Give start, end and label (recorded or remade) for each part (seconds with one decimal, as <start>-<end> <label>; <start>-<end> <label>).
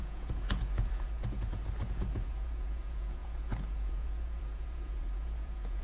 0.0-5.8 remade